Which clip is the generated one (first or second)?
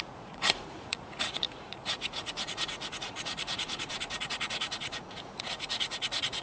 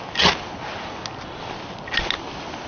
first